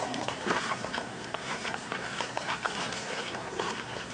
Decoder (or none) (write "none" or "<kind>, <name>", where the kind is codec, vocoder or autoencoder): codec, SNAC